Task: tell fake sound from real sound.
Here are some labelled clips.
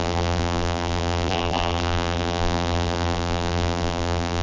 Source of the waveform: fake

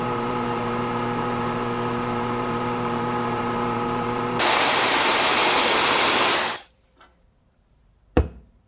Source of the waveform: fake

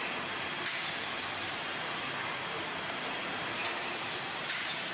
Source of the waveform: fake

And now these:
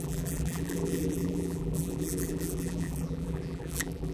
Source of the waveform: fake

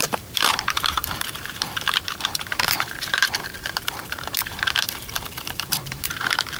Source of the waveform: fake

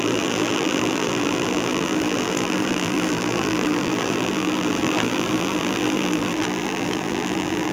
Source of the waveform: fake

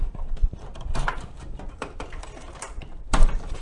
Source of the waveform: fake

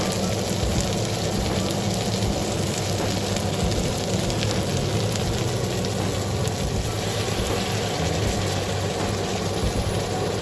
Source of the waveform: real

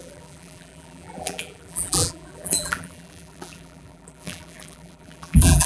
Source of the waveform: fake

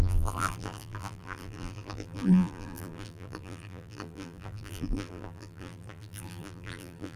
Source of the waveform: fake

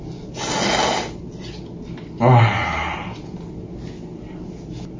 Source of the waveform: real